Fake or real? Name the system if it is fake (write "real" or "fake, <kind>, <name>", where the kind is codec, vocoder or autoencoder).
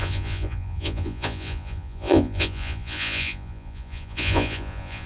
fake, vocoder, Vocos